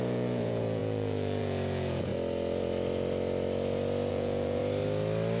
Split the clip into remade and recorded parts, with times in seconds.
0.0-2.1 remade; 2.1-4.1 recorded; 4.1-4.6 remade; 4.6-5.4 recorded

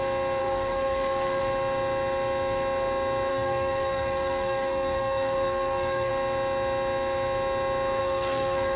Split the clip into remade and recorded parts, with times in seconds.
0.0-0.4 recorded; 0.4-1.4 remade; 1.4-3.3 recorded; 3.3-6.1 remade; 6.1-8.0 recorded; 8.0-8.8 remade

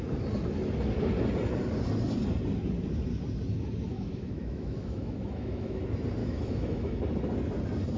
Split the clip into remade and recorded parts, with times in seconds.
0.0-3.9 recorded; 3.9-5.8 remade; 5.8-6.2 recorded; 6.2-7.0 remade; 7.0-8.0 recorded

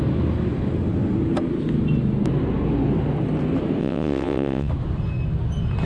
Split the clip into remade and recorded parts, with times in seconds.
0.0-3.8 recorded; 3.8-4.7 remade; 4.7-5.9 recorded

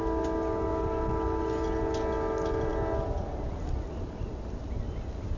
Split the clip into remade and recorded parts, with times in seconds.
0.0-5.4 recorded